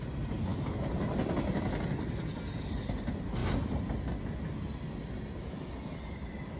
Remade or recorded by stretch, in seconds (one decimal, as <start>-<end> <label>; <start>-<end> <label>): 0.0-6.6 recorded